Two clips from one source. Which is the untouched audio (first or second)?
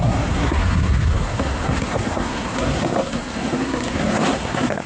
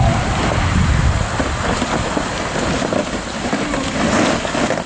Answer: second